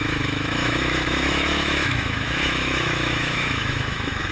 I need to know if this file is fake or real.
fake